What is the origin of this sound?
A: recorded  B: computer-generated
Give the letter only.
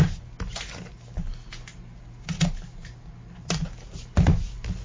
A